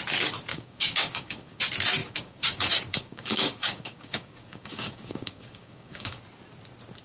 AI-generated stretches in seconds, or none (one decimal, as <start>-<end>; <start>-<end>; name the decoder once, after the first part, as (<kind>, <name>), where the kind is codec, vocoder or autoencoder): 0.5-1.6 (codec, DAC); 2.0-6.2